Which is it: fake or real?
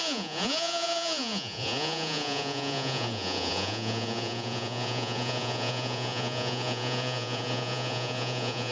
fake